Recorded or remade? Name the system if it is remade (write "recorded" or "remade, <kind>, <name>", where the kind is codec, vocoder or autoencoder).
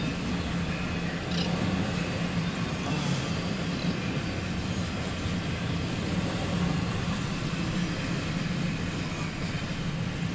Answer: recorded